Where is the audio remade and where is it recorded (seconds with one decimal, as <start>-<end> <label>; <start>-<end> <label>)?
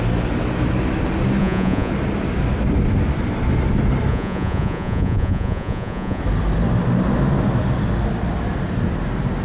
0.0-1.4 recorded; 1.4-1.9 remade; 1.9-4.1 recorded; 4.1-6.2 remade; 6.2-9.4 recorded